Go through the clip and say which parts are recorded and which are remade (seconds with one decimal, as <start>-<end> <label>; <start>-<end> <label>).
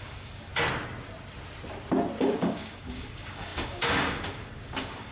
0.0-0.5 remade; 0.5-2.2 recorded; 2.2-5.1 remade